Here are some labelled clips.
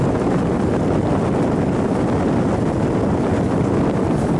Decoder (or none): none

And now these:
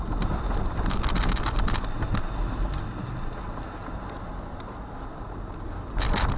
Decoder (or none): none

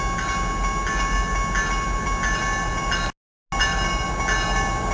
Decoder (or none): none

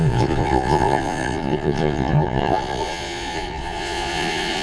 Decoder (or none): vocoder, Vocos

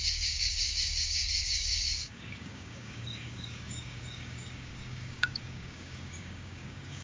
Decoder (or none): codec, DAC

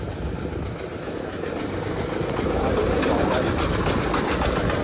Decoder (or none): none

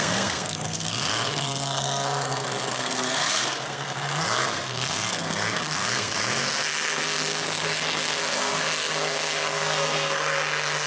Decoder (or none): codec, SNAC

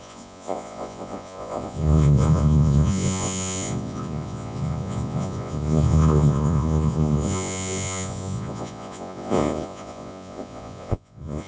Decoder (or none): vocoder, Vocos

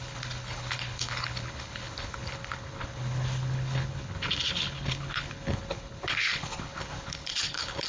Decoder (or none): codec, HILCodec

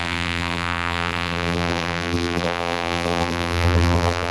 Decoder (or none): vocoder, BigVGAN v2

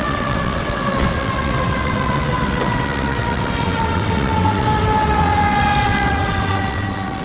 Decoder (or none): vocoder, WaveNeXt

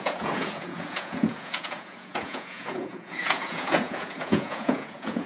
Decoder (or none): vocoder, Vocos